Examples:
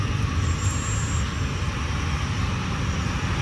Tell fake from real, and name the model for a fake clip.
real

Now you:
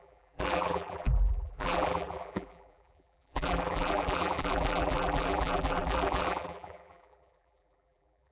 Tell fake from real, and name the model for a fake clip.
fake, vocoder, BigVGAN v2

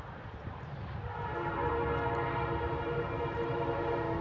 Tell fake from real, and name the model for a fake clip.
fake, vocoder, BigVGAN v2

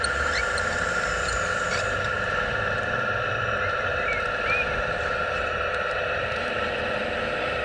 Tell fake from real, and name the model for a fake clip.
fake, vocoder, BigVGAN v2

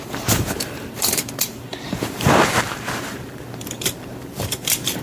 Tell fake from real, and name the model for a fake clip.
fake, vocoder, BigVGAN v2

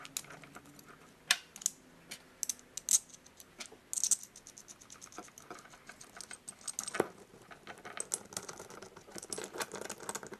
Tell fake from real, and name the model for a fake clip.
real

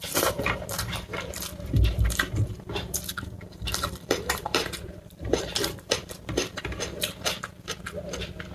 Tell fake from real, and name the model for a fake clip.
fake, vocoder, BigVGAN v2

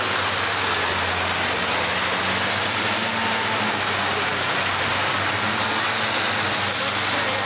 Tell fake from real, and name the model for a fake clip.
real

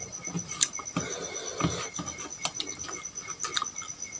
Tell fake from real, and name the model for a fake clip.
real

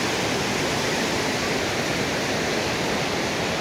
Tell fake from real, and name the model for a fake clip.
real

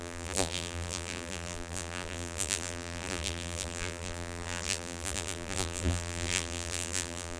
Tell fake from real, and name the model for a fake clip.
fake, vocoder, BigVGAN v2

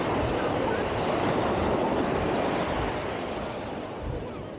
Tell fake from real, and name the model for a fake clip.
fake, vocoder, BigVGAN v2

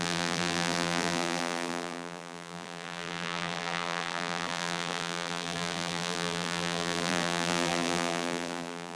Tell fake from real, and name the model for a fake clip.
fake, vocoder, BigVGAN v2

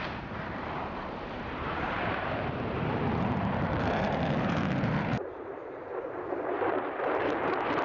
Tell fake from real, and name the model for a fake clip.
fake, vocoder, BigVGAN v2